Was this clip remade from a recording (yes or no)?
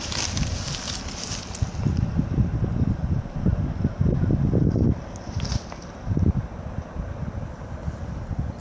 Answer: no